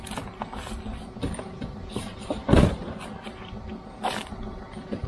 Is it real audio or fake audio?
real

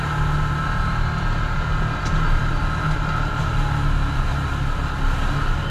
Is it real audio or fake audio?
real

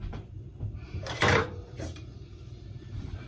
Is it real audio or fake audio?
fake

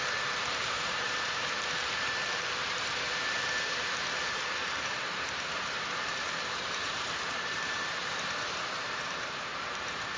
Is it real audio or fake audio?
fake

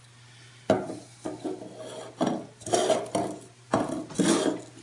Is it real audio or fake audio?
real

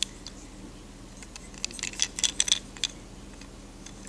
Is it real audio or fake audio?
real